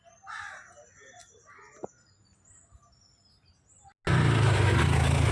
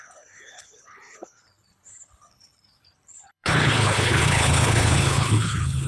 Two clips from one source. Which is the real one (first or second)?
first